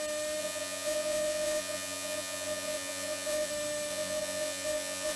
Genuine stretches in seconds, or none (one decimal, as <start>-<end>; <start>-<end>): 0.0-0.4; 3.5-3.9